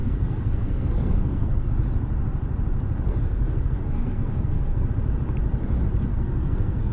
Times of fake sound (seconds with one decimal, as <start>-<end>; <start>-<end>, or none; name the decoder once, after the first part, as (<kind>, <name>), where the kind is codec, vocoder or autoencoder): 0.0-1.7 (codec, SNAC); 3.1-4.9; 6.1-6.9